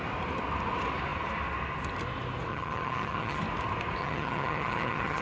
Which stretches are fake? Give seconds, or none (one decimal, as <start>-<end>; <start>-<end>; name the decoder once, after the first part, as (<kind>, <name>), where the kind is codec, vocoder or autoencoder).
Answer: 2.5-3.4 (vocoder, HiFi-GAN); 4.0-5.2